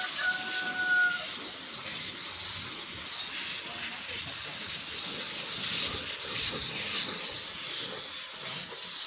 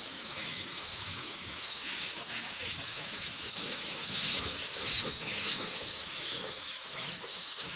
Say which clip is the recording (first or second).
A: first